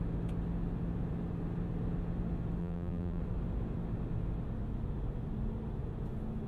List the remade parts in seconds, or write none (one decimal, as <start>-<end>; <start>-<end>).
2.6-3.2